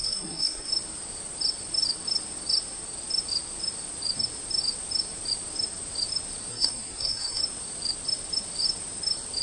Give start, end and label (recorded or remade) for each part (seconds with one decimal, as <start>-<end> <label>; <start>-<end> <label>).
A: 0.0-0.7 remade; 0.7-6.5 recorded; 6.5-7.4 remade; 7.4-9.4 recorded